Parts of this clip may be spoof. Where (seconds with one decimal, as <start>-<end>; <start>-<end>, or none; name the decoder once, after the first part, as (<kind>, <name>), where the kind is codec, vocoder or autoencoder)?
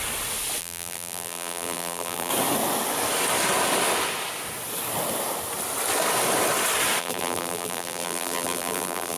0.6-2.3 (vocoder, BigVGAN v2); 7.0-9.2